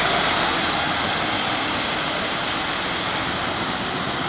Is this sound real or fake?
real